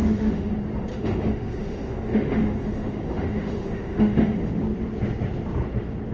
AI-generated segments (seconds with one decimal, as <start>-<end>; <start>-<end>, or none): 0.0-0.5; 0.9-4.6